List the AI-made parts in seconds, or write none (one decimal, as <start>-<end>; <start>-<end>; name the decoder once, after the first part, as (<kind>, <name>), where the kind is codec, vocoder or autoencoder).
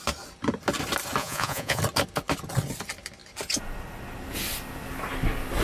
1.2-1.8 (vocoder, Vocos)